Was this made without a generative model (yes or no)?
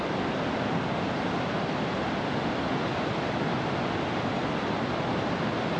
yes